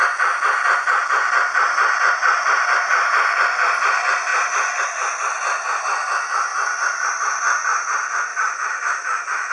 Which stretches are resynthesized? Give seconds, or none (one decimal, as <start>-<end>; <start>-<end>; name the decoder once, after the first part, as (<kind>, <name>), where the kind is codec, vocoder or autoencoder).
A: 8.3-9.5 (autoencoder, DAC-VAE)